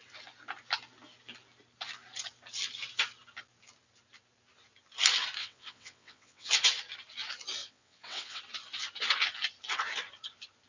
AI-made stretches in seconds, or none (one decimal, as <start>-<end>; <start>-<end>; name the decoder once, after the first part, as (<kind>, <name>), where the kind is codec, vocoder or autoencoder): 5.4-6.5 (vocoder, WaveNeXt); 7.6-8.4